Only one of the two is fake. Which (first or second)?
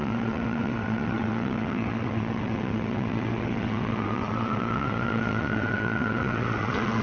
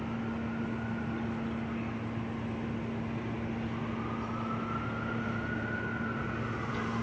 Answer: first